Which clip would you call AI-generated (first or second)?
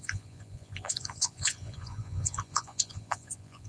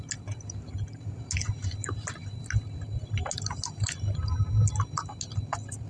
first